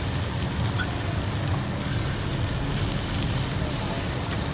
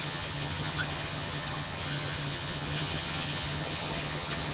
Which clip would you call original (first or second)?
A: first